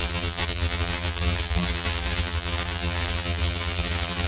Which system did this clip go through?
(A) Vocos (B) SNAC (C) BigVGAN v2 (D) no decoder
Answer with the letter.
C